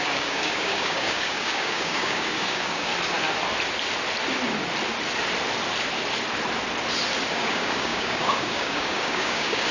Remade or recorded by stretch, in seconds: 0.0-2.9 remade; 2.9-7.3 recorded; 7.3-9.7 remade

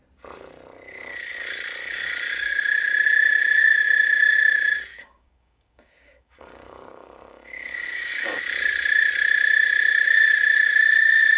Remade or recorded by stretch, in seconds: 0.0-1.8 recorded; 1.8-2.6 remade; 2.6-4.9 recorded; 4.9-8.4 remade; 8.4-11.4 recorded

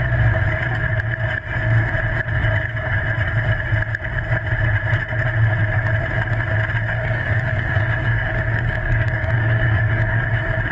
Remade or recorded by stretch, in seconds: 0.0-2.4 recorded; 2.4-3.0 remade; 3.0-6.8 recorded; 6.8-10.2 remade; 10.2-10.7 recorded

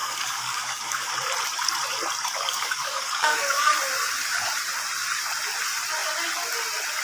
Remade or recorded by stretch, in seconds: 0.0-1.1 remade; 1.1-2.3 recorded; 2.3-3.7 remade; 3.7-7.0 recorded

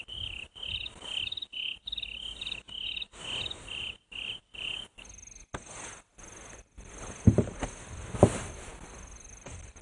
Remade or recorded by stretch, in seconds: 0.0-9.8 recorded

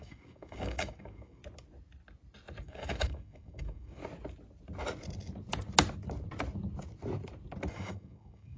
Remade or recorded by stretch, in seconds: 0.0-1.4 remade; 1.4-2.6 recorded; 2.6-4.0 remade; 4.0-7.7 recorded; 7.7-8.6 remade

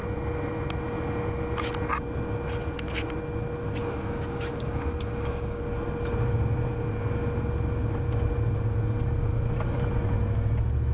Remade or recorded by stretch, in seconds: 0.0-3.8 recorded; 3.8-5.6 remade; 5.6-10.9 recorded

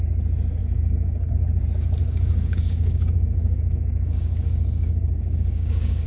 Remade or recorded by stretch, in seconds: 0.0-0.6 recorded; 0.6-1.3 remade; 1.3-2.0 recorded; 2.0-6.1 remade